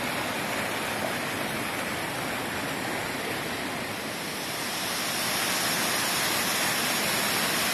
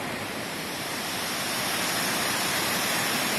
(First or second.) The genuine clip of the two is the first